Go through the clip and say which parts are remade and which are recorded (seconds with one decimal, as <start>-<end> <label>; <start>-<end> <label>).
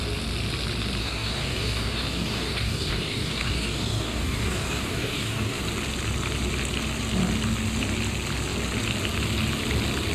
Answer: 0.0-1.0 recorded; 1.0-5.6 remade; 5.6-10.1 recorded